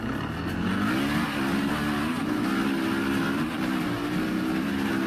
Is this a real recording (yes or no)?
yes